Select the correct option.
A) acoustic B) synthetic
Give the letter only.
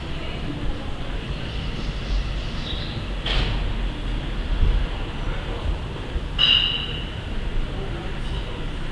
A